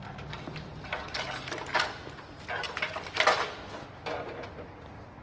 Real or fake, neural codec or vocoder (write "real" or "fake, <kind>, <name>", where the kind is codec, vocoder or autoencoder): real